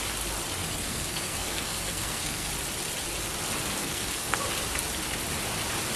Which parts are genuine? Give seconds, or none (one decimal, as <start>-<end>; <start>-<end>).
0.0-0.6; 2.5-3.8; 4.4-6.0

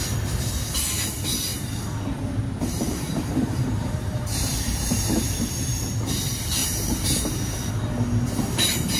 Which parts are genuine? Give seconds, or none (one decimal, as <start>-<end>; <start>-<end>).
0.0-1.5; 5.8-6.6; 7.7-9.0